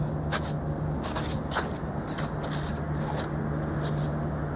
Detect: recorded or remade recorded